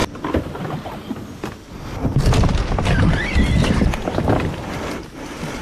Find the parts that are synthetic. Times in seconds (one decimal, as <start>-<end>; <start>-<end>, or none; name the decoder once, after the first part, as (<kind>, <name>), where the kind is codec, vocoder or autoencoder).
none